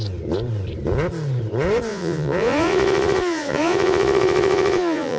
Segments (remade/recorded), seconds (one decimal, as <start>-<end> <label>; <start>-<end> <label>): 0.0-1.9 recorded; 1.9-5.2 remade